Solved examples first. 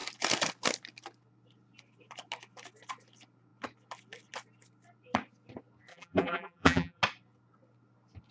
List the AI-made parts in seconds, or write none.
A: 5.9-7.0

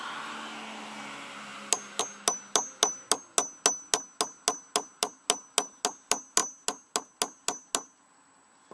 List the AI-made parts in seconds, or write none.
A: none

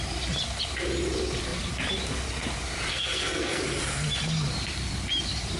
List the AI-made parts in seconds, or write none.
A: 2.9-3.6